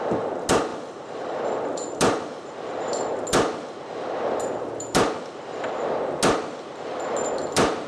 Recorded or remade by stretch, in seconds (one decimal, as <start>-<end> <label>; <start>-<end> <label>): 0.0-7.9 recorded